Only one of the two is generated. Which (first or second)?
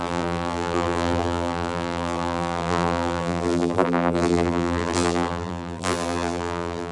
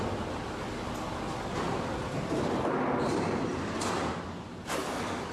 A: first